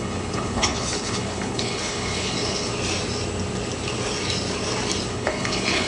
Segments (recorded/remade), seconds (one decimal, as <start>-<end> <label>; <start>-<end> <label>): 0.0-2.7 remade; 2.7-5.1 recorded; 5.1-5.9 remade